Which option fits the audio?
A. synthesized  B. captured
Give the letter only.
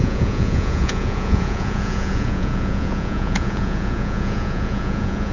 A